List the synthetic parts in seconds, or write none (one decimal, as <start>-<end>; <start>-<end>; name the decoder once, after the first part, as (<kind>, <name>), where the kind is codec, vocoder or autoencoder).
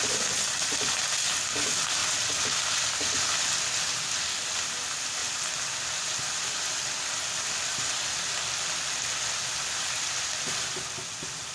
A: none